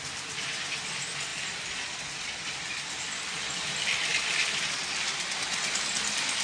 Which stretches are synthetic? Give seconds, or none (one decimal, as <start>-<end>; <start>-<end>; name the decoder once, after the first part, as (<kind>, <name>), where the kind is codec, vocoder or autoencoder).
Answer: 1.3-2.0 (vocoder, BigVGAN v2); 4.1-4.8